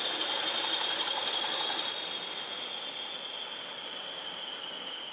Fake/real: real